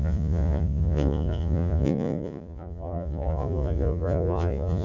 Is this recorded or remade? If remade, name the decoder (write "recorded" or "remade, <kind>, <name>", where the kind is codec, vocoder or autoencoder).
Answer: remade, vocoder, Vocos